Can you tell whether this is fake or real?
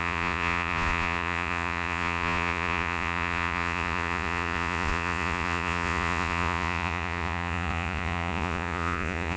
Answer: fake